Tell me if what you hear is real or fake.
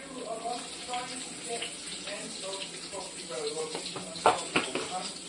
real